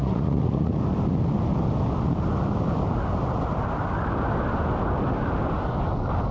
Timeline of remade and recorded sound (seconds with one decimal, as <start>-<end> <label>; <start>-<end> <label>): 0.0-0.7 remade; 0.7-6.3 recorded